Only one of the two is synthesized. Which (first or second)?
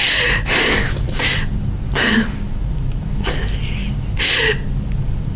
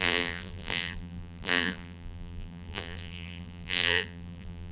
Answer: second